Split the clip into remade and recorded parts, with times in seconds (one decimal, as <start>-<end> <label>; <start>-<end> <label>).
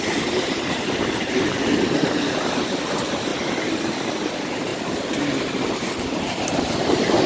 0.0-3.3 remade; 3.3-4.3 recorded; 4.3-4.7 remade; 4.7-6.1 recorded; 6.1-7.3 remade